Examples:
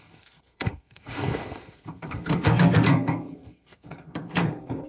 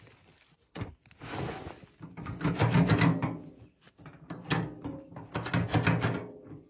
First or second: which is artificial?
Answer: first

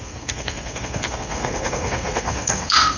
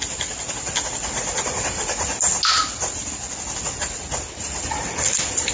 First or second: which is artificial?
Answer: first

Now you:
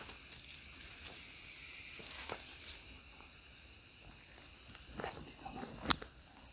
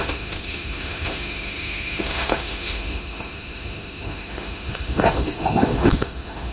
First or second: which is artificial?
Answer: second